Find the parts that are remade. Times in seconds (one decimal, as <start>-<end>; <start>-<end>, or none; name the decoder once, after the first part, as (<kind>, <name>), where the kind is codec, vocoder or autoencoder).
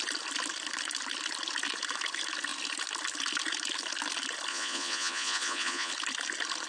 4.5-5.9 (vocoder, Vocos)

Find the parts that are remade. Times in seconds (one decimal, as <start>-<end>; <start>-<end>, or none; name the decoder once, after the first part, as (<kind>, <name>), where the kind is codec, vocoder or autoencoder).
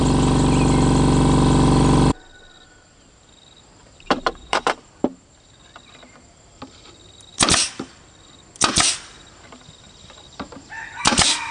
3.8-4.8 (vocoder, BigVGAN v2)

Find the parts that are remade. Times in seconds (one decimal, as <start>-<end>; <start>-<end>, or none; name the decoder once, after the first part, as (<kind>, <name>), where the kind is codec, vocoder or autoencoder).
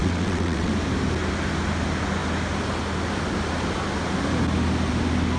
0.0-0.7 (vocoder, WaveNeXt)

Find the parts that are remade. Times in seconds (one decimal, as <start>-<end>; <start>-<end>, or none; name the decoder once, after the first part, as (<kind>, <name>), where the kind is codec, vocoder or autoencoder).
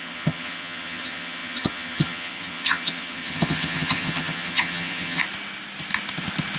0.0-5.2 (vocoder, HiFi-GAN)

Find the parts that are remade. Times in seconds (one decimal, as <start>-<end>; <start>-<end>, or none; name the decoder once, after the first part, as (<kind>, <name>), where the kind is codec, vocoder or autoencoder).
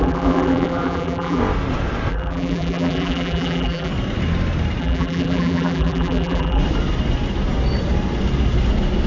0.0-1.4 (vocoder, BigVGAN v2); 2.1-3.9; 4.8-6.6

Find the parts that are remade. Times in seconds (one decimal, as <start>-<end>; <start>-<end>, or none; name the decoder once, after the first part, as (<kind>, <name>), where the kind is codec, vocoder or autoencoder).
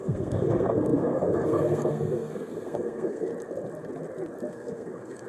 0.0-3.3 (codec, SNAC); 4.5-5.3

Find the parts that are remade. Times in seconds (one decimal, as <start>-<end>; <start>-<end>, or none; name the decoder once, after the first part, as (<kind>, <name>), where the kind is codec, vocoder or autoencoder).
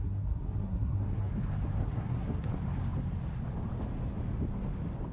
0.0-1.3 (codec, SNAC); 1.8-2.5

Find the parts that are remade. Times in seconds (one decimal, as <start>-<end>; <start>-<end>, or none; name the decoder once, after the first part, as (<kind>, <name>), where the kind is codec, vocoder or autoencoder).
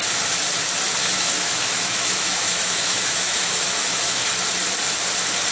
1.0-4.3 (autoencoder, DAC-VAE)